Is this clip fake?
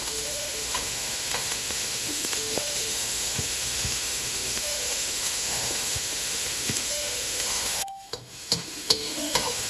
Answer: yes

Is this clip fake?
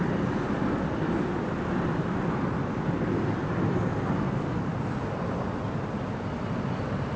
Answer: no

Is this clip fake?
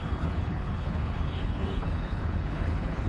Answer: yes